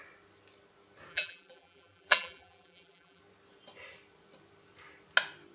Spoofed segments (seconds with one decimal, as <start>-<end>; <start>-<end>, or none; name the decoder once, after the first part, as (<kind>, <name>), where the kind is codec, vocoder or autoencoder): 1.1-3.2 (vocoder, BigVGAN v2)

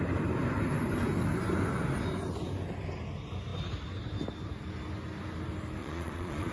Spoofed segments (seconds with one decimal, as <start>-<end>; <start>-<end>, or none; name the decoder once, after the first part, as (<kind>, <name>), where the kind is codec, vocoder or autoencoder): 5.8-6.5 (vocoder, Vocos)

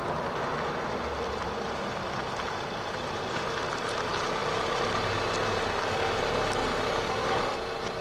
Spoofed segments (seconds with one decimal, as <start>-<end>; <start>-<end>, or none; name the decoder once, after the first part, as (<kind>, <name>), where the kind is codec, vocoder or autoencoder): none